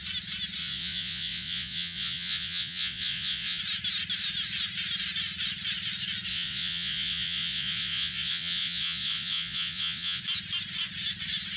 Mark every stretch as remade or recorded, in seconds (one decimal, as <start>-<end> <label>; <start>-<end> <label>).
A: 0.0-0.6 recorded; 0.6-3.6 remade; 3.6-6.3 recorded; 6.3-10.2 remade; 10.2-11.6 recorded